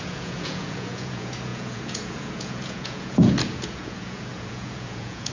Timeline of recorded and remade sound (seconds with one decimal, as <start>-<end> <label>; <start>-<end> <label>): 0.0-5.3 remade